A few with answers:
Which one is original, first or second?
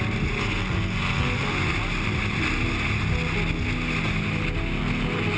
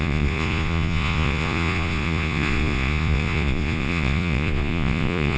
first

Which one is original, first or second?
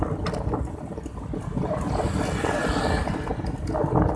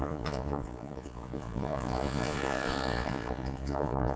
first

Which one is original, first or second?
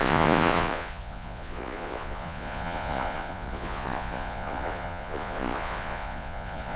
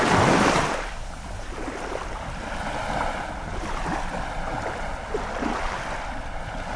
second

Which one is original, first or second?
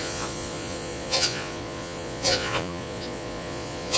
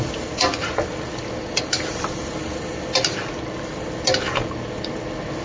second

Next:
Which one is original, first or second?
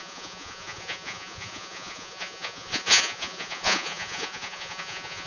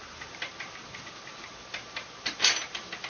second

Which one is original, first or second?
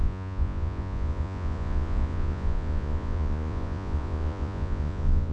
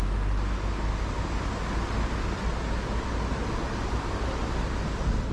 second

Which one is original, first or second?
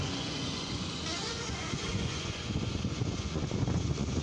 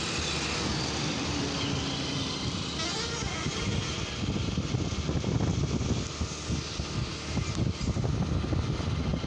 second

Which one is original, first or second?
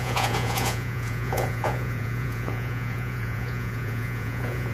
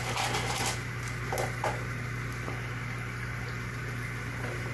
second